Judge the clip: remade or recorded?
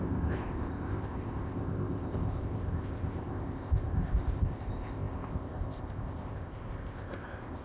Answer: remade